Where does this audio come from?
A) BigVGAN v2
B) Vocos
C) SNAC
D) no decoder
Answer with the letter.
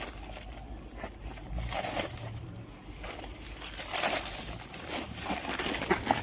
D